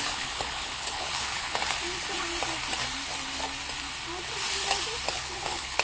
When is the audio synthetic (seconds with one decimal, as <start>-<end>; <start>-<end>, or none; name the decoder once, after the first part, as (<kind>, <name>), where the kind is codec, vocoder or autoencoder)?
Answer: 0.0-1.6 (codec, HILCodec); 5.1-5.8